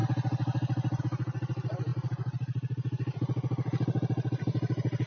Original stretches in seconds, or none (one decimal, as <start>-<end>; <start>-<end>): 0.0-5.1